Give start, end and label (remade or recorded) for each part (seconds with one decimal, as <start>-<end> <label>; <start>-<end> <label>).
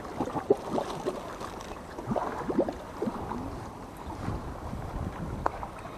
0.0-6.0 recorded